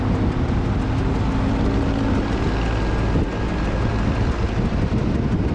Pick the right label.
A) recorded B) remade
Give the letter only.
A